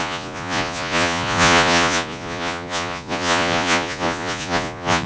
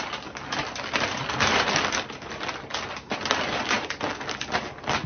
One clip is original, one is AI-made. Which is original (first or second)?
second